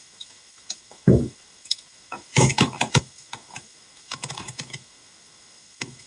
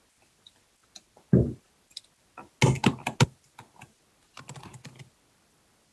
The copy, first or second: first